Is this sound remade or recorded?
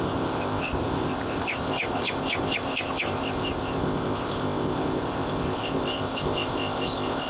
remade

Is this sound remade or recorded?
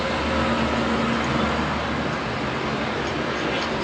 recorded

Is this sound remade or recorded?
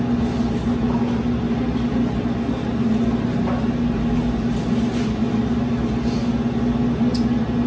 recorded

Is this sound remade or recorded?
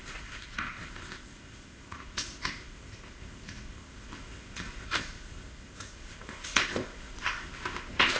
remade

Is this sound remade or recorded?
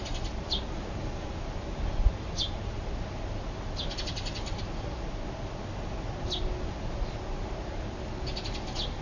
recorded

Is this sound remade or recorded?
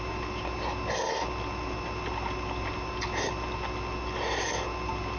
recorded